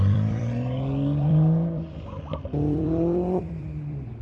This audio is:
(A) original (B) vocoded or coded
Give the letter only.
B